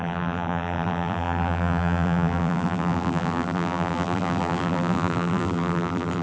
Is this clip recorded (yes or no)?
no